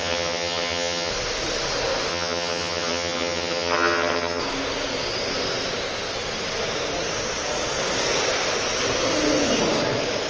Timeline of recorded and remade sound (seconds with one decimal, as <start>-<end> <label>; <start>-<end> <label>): 0.0-1.1 remade; 1.1-2.1 recorded; 2.1-4.4 remade; 4.4-10.3 recorded